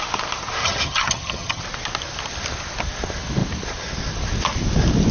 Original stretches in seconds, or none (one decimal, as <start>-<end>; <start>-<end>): 0.0-0.6; 1.6-5.1